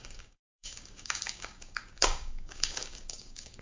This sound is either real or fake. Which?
fake